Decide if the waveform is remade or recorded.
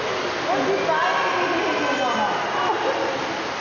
recorded